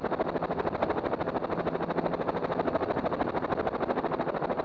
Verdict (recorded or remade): recorded